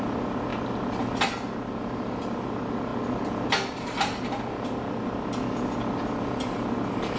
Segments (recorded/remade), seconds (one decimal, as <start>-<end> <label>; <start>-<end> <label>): 0.0-7.2 recorded